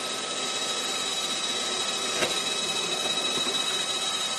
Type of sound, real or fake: real